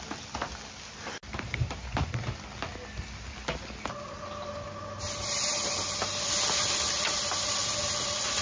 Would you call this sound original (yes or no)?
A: yes